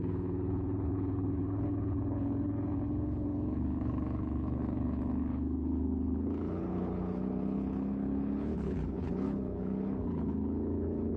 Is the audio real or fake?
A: fake